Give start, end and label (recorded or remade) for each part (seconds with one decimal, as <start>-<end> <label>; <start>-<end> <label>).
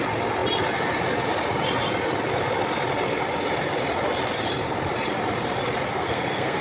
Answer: 0.0-5.9 recorded; 5.9-6.6 remade